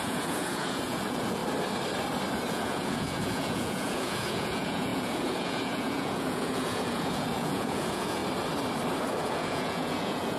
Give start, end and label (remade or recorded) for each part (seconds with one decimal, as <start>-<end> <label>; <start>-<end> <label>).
0.0-1.4 remade; 1.4-2.5 recorded; 2.5-8.2 remade; 8.2-9.0 recorded; 9.0-10.4 remade